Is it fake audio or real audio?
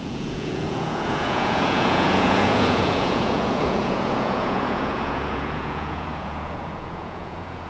fake